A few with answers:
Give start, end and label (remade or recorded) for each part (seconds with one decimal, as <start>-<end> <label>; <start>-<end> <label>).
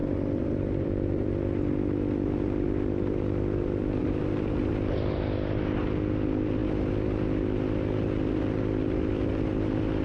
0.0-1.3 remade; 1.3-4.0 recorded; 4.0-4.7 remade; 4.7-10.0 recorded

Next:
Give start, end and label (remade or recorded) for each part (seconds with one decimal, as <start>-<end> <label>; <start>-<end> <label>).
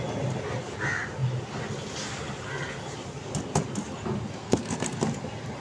0.0-4.4 recorded; 4.4-5.0 remade; 5.0-5.6 recorded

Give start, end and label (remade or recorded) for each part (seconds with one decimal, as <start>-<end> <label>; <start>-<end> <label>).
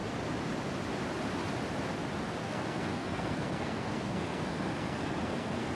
0.0-2.4 recorded; 2.4-5.7 remade